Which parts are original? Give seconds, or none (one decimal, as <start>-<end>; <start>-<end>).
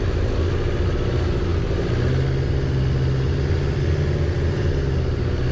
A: 0.0-5.5